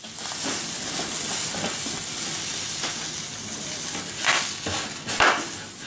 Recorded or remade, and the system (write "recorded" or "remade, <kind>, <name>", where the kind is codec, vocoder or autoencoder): recorded